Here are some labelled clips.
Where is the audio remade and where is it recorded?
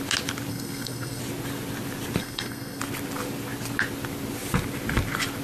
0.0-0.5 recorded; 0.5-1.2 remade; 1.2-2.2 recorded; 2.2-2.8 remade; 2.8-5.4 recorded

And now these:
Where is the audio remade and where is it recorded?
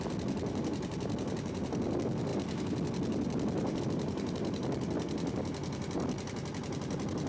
0.0-7.3 recorded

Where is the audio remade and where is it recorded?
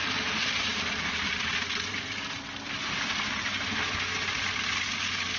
0.0-5.4 recorded